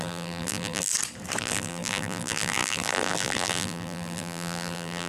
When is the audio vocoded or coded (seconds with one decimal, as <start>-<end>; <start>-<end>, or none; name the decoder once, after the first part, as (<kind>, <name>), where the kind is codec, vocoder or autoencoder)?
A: 0.0-0.9 (vocoder, BigVGAN v2); 1.4-5.1